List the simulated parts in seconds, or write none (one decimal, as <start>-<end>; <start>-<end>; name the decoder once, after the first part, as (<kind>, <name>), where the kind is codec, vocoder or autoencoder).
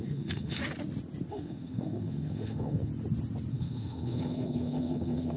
0.0-0.6 (autoencoder, DAC-VAE); 1.3-2.9; 3.5-5.4